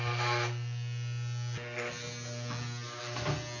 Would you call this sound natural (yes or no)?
yes